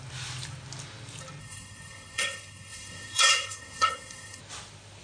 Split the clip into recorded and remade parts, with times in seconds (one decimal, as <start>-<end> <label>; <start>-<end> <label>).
0.0-1.4 recorded; 1.4-4.4 remade; 4.4-5.0 recorded